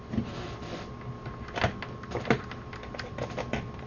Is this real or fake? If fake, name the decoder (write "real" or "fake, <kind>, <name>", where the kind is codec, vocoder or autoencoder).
fake, vocoder, BigVGAN v2